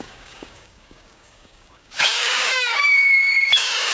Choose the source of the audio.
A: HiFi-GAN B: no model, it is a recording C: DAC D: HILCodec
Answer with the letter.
C